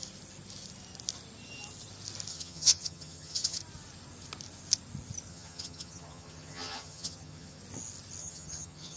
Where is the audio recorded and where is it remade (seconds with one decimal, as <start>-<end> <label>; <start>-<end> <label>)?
0.0-2.3 recorded; 2.3-3.6 remade; 3.6-5.3 recorded; 5.3-7.6 remade; 7.6-8.2 recorded; 8.2-9.0 remade